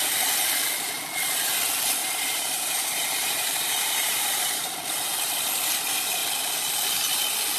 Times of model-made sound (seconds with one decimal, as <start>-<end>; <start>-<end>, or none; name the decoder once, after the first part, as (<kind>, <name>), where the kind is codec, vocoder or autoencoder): 2.0-4.8 (vocoder, BigVGAN v2)